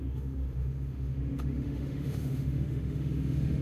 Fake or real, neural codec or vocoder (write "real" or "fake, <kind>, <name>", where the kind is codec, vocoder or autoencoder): fake, autoencoder, DAC-VAE